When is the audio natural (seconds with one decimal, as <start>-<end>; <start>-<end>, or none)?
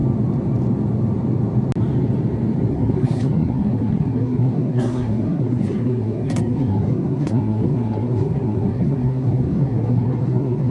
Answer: 0.0-2.7